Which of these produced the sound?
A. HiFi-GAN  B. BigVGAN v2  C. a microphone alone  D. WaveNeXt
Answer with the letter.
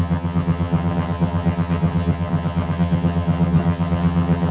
A